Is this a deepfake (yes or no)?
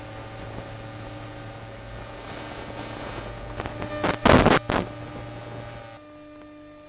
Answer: no